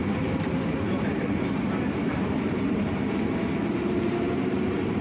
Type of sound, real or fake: fake